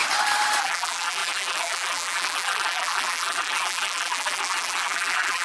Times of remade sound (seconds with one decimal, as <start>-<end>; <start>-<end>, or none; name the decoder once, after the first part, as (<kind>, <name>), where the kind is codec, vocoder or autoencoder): 0.6-5.4 (vocoder, BigVGAN v2)